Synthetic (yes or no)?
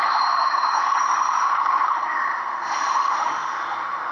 yes